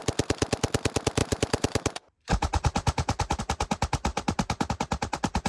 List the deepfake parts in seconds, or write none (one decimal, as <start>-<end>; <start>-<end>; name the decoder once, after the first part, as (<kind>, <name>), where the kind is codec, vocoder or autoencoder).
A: 1.2-3.4 (vocoder, BigVGAN v2); 4.1-4.7